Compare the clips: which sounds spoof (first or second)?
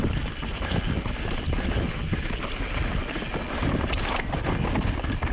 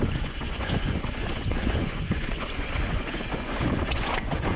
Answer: second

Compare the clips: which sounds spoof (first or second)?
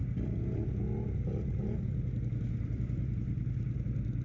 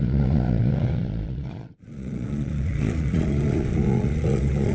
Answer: second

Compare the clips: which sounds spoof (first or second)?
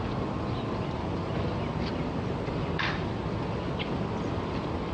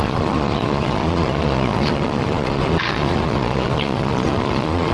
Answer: second